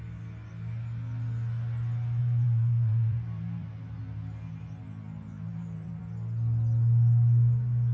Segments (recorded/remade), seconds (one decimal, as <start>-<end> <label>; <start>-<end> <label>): 0.0-2.2 recorded; 2.2-4.0 remade; 4.0-5.3 recorded; 5.3-6.0 remade; 6.0-7.9 recorded

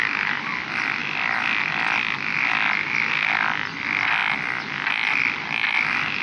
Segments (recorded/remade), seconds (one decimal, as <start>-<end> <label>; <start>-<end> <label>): 0.0-6.2 recorded